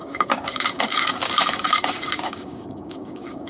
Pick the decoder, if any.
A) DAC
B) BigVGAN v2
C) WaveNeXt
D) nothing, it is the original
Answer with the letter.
A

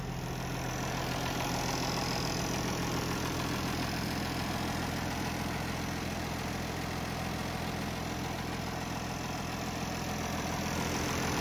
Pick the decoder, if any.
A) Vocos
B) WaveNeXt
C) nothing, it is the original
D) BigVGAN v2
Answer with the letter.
C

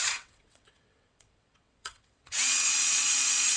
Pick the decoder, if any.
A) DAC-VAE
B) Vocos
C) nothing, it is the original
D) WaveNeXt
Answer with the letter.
D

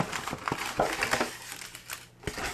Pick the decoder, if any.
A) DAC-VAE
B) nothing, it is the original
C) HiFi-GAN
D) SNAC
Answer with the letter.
B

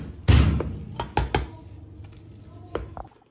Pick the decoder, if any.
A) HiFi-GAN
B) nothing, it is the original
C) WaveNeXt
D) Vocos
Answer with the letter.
B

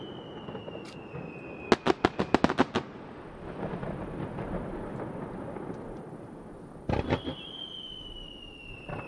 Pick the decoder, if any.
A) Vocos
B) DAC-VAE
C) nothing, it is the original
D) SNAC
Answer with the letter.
C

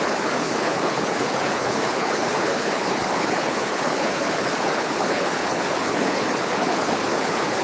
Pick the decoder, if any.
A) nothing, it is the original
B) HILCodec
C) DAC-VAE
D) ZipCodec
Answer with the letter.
B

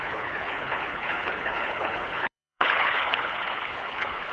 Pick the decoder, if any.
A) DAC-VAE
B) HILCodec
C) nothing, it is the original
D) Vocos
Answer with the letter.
B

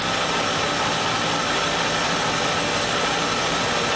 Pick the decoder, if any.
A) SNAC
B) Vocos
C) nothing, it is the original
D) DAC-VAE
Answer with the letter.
C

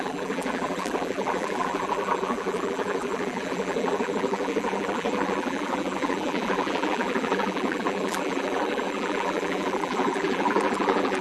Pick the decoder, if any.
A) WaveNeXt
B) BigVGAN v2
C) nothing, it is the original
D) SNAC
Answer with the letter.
B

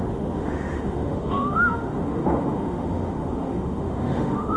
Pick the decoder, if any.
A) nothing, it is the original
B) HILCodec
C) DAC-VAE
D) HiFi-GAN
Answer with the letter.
C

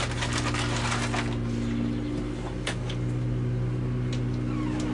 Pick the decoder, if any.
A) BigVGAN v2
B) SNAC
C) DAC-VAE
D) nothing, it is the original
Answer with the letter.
D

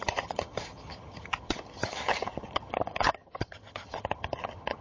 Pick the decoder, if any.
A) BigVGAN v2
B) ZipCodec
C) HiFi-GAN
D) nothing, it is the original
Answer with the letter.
C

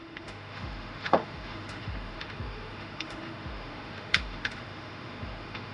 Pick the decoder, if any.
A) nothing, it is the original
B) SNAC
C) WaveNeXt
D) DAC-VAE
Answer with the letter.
D